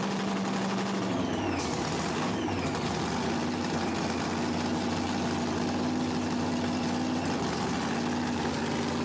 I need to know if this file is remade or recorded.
recorded